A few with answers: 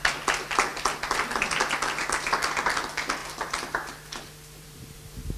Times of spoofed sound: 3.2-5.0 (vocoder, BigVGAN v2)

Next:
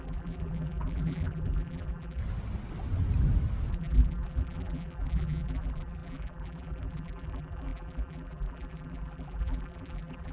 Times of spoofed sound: 0.0-2.2 (vocoder, BigVGAN v2); 3.7-10.3

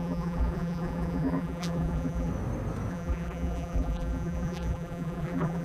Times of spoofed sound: 0.0-2.3 (vocoder, BigVGAN v2); 2.9-5.6

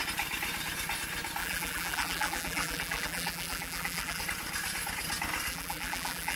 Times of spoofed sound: 1.4-4.2 (vocoder, BigVGAN v2); 5.5-6.4

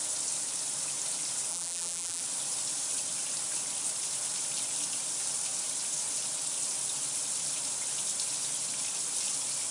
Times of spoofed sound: 1.5-2.2 (vocoder, BigVGAN v2)

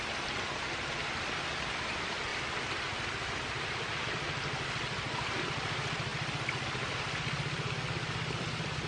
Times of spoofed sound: 0.0-2.3 (vocoder, BigVGAN v2); 4.0-8.9

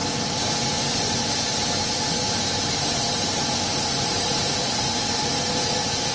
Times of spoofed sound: none

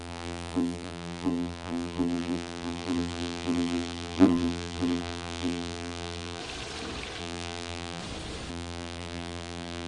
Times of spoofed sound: 0.0-6.4 (vocoder, BigVGAN v2); 7.2-8.0; 8.5-9.9